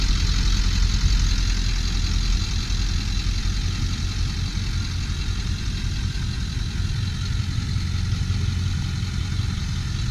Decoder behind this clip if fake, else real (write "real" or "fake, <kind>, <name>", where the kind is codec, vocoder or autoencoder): real